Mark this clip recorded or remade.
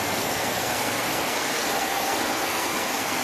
remade